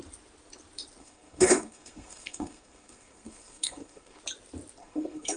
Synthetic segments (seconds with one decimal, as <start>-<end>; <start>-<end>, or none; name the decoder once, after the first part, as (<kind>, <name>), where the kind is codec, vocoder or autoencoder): 1.0-4.2 (codec, SNAC); 4.8-5.4